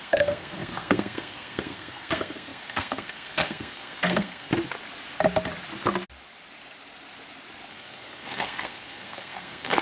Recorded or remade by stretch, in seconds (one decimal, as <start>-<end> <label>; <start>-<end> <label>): 0.0-4.5 remade; 4.5-7.7 recorded; 7.7-9.8 remade